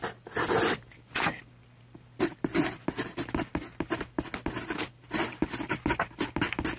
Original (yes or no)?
yes